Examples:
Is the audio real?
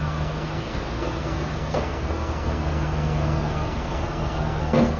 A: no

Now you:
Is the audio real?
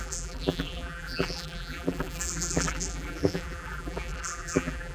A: no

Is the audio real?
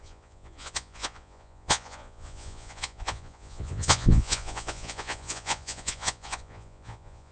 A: no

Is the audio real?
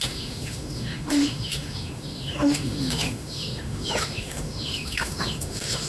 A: no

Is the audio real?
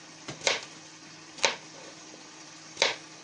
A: yes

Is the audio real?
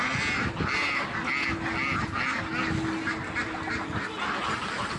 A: yes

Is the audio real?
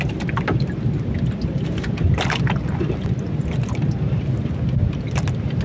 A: yes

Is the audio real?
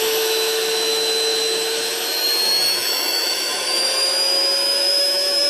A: no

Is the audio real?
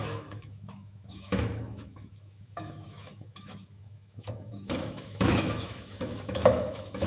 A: no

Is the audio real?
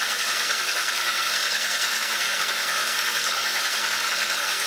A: no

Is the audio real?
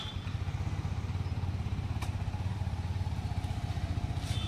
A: yes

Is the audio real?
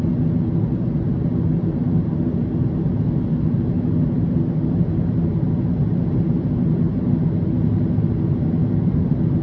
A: yes